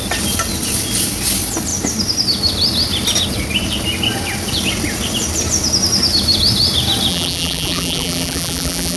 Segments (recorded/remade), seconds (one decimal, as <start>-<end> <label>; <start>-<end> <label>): 0.0-7.1 recorded; 7.1-9.0 remade